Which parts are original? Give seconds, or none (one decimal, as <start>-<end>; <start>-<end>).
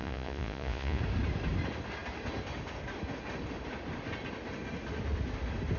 1.0-5.8